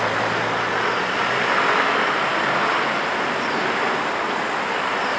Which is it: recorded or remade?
recorded